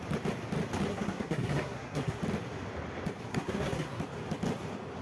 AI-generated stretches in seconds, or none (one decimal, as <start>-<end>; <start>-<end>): 0.9-2.2; 3.3-4.0